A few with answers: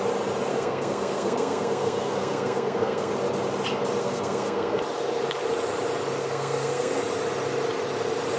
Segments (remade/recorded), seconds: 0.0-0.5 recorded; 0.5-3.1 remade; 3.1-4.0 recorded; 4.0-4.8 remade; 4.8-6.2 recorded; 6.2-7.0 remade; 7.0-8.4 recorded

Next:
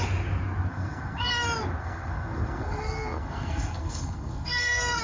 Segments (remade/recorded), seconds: 0.0-0.7 recorded; 0.7-1.3 remade; 1.3-1.8 recorded; 1.8-5.0 remade

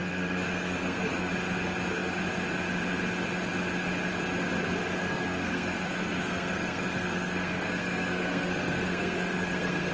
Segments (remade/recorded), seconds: 0.0-1.3 remade; 1.3-5.0 recorded; 5.0-9.9 remade

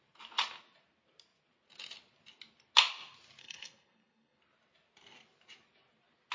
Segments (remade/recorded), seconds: 0.0-3.4 recorded; 3.4-4.4 remade; 4.4-6.3 recorded

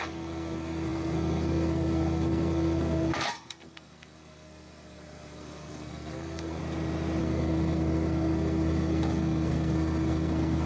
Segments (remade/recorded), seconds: 0.0-6.6 remade; 6.6-7.2 recorded; 7.2-10.7 remade